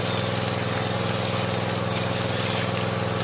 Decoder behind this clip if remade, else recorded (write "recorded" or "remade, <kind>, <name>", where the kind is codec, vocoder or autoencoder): recorded